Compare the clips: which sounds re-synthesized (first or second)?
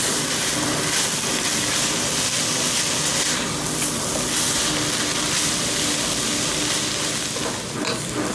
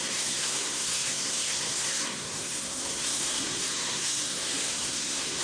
second